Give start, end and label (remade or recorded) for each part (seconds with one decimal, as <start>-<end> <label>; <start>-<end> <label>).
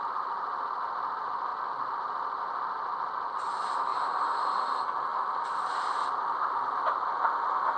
0.0-7.8 recorded